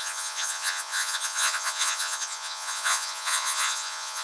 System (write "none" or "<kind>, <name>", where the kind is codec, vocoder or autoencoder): vocoder, Vocos